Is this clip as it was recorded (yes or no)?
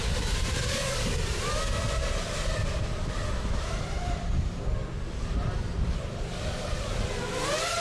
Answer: yes